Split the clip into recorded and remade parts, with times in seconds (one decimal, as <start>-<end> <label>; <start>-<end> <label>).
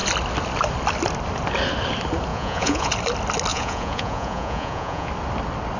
0.0-2.3 recorded; 2.3-2.9 remade; 2.9-3.5 recorded; 3.5-5.1 remade; 5.1-5.8 recorded